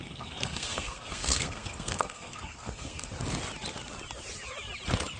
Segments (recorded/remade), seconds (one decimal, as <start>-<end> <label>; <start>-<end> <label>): 0.0-3.1 remade; 3.1-5.2 recorded